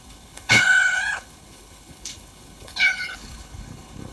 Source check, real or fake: fake